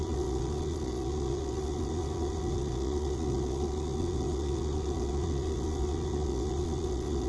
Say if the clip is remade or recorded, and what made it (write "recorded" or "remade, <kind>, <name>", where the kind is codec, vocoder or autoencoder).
remade, vocoder, Vocos